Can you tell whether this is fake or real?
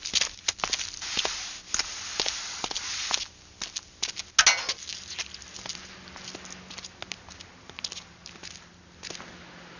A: real